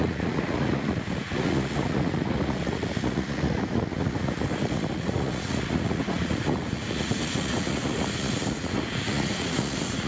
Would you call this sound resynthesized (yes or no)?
yes